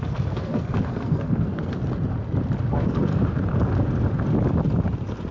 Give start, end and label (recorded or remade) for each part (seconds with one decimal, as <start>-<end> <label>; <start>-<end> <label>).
0.0-1.8 remade; 1.8-2.7 recorded; 2.7-3.1 remade; 3.1-5.3 recorded